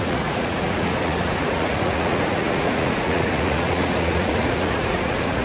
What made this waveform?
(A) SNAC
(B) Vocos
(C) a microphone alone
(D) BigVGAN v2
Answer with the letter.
B